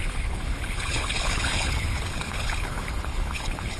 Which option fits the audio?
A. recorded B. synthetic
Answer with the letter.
B